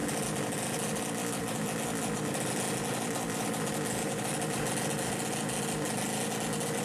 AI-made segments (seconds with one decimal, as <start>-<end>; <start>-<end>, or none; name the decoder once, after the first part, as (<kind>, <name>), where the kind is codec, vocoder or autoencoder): none